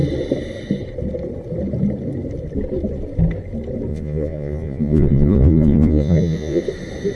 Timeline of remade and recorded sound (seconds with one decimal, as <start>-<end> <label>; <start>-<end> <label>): 0.0-3.9 recorded; 3.9-6.6 remade; 6.6-7.2 recorded